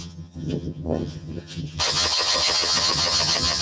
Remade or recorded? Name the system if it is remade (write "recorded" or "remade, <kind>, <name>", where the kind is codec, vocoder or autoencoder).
remade, vocoder, HiFi-GAN